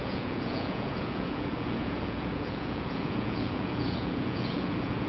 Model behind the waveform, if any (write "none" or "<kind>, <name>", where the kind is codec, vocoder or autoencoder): vocoder, Vocos